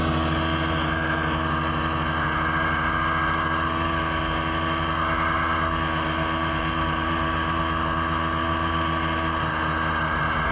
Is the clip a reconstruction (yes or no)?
no